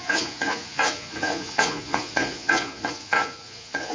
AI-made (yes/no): yes